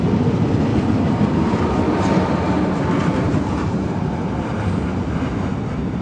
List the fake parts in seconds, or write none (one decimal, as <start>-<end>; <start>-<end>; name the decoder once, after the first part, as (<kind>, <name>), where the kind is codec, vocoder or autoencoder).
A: 0.7-1.6 (vocoder, BigVGAN v2); 3.0-5.5